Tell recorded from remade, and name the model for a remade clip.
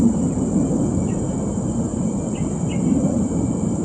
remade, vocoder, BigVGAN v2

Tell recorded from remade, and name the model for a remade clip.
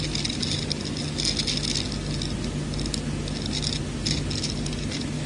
recorded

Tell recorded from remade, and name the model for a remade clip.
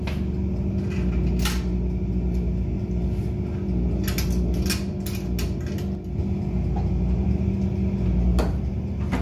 recorded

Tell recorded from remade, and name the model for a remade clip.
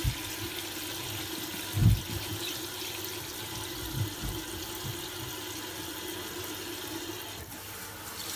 recorded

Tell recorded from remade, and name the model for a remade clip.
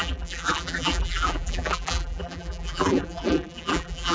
remade, vocoder, BigVGAN v2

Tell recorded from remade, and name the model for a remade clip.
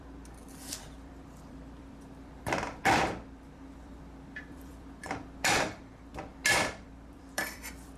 remade, vocoder, BigVGAN v2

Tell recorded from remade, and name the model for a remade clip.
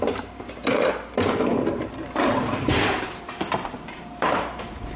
remade, vocoder, BigVGAN v2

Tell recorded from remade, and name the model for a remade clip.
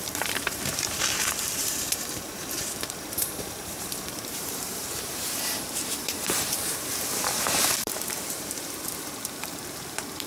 remade, vocoder, BigVGAN v2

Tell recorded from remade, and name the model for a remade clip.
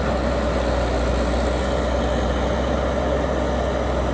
recorded